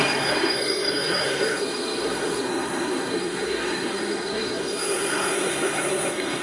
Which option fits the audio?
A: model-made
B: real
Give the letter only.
A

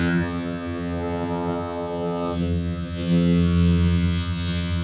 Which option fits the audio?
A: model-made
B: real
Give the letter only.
A